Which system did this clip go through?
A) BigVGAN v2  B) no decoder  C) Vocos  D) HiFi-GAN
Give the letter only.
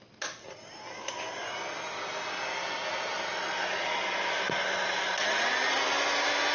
B